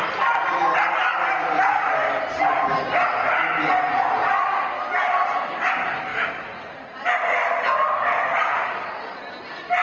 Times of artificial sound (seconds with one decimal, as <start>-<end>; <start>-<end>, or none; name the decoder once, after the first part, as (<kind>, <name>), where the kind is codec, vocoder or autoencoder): none

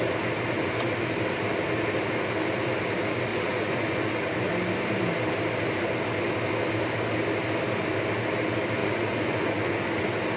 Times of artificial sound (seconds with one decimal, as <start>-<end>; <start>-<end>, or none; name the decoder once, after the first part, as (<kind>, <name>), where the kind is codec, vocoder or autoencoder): 3.3-4.1 (vocoder, Vocos); 8.8-10.0

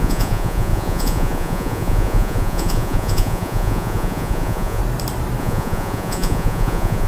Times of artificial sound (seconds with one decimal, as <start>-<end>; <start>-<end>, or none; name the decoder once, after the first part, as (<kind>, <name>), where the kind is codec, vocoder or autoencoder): 0.0-4.8 (vocoder, Vocos); 5.4-7.1

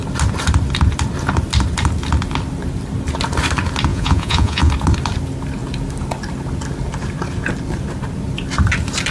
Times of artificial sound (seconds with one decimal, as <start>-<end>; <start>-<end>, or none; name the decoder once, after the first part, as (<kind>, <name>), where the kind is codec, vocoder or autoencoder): 3.9-4.7 (vocoder, Vocos)

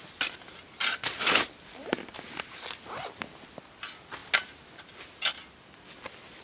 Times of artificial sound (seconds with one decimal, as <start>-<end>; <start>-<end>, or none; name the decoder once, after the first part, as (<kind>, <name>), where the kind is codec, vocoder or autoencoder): none

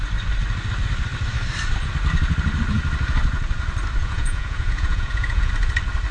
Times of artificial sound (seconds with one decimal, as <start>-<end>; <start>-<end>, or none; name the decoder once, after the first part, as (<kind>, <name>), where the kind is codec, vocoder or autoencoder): 4.0-5.5 (vocoder, Vocos)